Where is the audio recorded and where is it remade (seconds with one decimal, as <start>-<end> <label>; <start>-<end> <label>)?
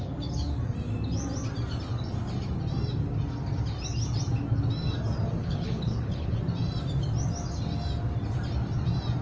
0.0-5.4 recorded; 5.4-6.4 remade; 6.4-9.2 recorded